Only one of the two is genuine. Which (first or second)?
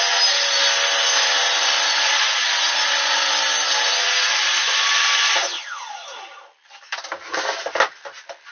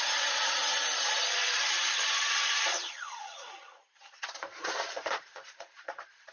first